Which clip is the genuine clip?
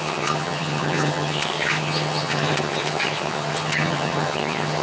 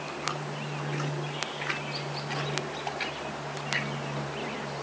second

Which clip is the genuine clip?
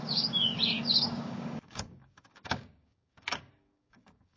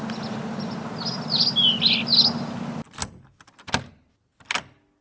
second